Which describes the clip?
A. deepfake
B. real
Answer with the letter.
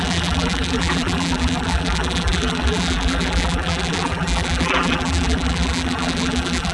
A